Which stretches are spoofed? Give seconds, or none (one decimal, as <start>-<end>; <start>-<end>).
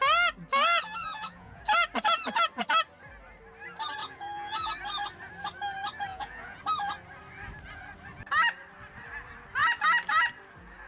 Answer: 1.0-1.6; 4.0-4.7; 6.1-6.6